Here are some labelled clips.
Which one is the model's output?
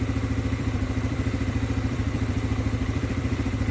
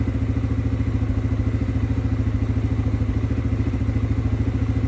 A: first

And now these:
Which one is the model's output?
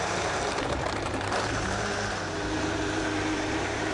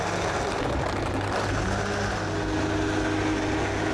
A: first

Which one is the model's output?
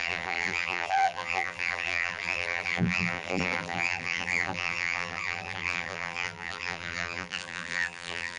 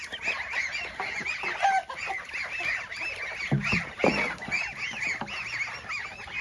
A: first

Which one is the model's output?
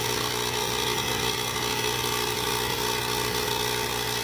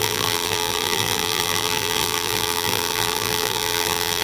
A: second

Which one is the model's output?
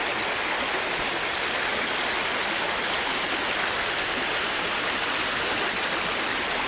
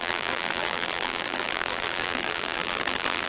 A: second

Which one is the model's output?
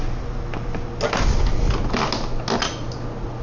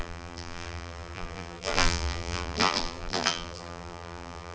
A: second